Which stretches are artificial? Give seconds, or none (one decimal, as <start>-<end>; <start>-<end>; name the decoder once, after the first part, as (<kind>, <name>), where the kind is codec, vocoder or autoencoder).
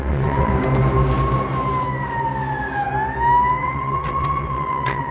0.0-0.5 (vocoder, WaveNeXt); 3.6-5.1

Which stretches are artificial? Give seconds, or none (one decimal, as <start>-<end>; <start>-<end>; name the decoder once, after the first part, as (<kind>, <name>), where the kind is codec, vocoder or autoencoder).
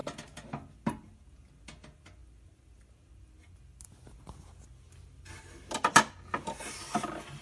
none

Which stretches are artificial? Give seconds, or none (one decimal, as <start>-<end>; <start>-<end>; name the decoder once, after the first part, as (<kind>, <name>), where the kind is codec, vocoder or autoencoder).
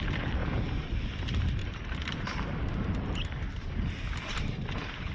0.4-1.1 (vocoder, BigVGAN v2); 1.6-5.1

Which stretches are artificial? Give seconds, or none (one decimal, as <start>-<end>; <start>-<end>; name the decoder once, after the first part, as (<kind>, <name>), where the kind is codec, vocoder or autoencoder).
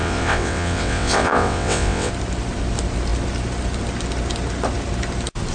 0.0-2.1 (vocoder, WaveNeXt)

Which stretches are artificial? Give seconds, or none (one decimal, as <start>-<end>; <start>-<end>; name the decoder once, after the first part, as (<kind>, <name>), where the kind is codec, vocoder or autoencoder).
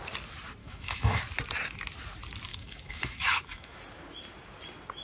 0.6-1.2 (autoencoder, DAC-VAE); 2.5-3.8